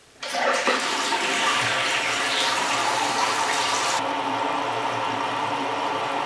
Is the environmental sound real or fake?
fake